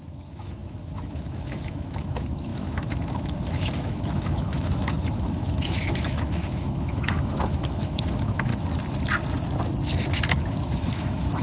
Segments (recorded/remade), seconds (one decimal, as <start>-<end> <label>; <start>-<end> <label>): 0.0-8.5 remade; 8.5-10.8 recorded; 10.8-11.4 remade